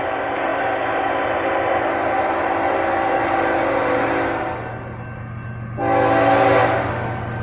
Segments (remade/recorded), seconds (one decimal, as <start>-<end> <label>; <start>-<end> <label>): 0.0-7.4 recorded